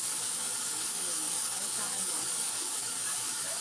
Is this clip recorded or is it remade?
remade